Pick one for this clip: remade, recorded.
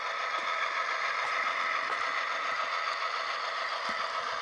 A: recorded